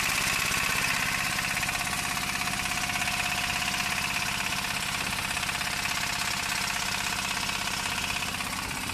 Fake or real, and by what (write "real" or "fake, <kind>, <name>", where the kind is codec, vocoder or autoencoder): real